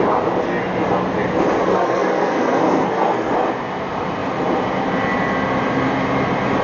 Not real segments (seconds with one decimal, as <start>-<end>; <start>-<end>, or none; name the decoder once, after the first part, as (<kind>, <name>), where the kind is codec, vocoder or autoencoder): 1.7-3.3 (codec, SNAC)